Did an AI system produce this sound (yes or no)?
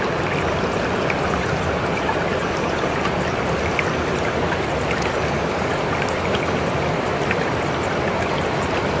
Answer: no